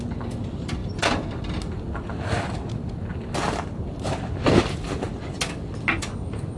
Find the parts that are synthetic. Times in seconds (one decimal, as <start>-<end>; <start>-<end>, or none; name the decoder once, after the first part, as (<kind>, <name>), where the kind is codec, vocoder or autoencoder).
none